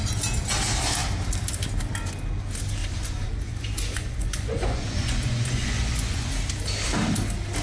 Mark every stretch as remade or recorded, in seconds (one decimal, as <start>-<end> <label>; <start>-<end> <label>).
0.0-2.8 recorded; 2.8-6.3 remade; 6.3-7.6 recorded

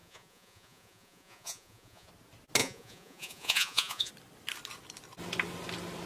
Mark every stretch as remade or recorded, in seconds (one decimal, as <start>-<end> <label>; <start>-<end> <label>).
0.0-2.1 remade; 2.1-2.6 recorded; 2.6-4.1 remade; 4.1-6.1 recorded

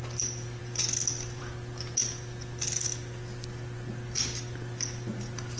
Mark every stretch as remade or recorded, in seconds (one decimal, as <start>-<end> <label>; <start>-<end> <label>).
0.0-5.6 recorded